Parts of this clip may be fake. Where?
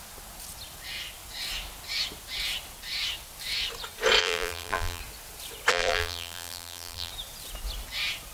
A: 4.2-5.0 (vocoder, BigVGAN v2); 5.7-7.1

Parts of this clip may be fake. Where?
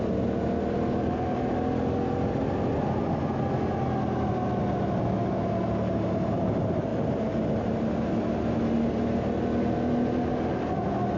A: none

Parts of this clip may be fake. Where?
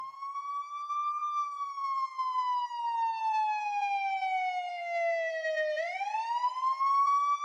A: 4.7-5.3 (vocoder, BigVGAN v2)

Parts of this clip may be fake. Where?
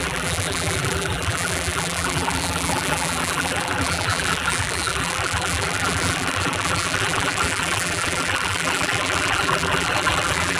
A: 0.0-10.6 (vocoder, BigVGAN v2)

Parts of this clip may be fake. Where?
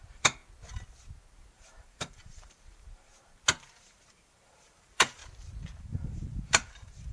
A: 0.0-0.4 (vocoder, BigVGAN v2); 1.5-3.1; 3.8-5.2; 5.8-7.1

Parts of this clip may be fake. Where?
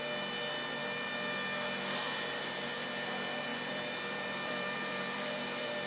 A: 3.5-5.9 (vocoder, BigVGAN v2)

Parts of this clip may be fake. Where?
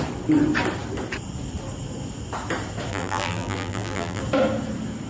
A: 2.9-4.2 (vocoder, BigVGAN v2)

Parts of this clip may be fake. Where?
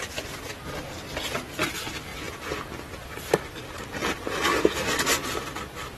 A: 2.1-2.7 (vocoder, BigVGAN v2)